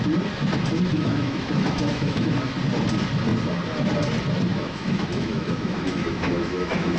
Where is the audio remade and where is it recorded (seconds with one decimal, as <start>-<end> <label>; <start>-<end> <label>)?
0.0-0.9 recorded; 0.9-2.3 remade; 2.3-4.5 recorded; 4.5-7.0 remade

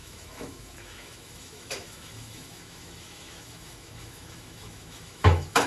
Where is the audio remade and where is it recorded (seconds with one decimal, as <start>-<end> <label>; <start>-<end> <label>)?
0.0-5.7 remade

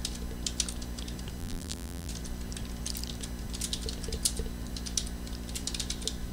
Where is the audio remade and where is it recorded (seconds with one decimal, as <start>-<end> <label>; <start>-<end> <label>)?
0.0-1.4 recorded; 1.4-2.1 remade; 2.1-6.3 recorded

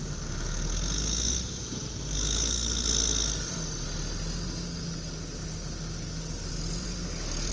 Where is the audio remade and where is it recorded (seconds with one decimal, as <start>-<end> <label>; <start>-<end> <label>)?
0.0-5.4 recorded; 5.4-7.5 remade

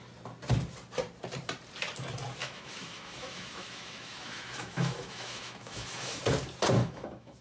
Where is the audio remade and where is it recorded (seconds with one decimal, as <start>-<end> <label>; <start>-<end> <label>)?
0.0-2.4 recorded; 2.4-6.2 remade; 6.2-6.8 recorded; 6.8-7.4 remade

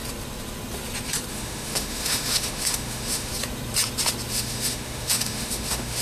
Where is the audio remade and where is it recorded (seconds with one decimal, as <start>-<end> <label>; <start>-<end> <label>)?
0.0-1.3 recorded; 1.3-3.3 remade; 3.3-4.3 recorded; 4.3-6.0 remade